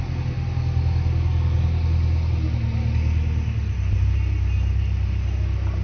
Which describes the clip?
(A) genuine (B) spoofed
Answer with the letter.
A